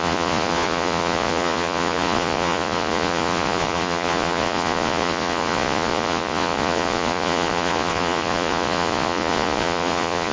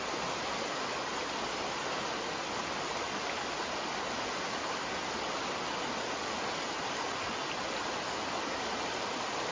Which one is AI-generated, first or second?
first